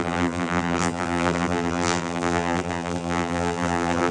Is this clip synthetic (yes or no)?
yes